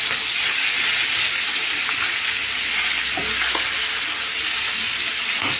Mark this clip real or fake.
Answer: real